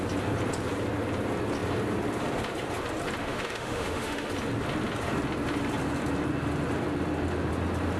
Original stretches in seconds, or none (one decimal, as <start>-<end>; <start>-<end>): 0.0-3.2; 4.3-8.0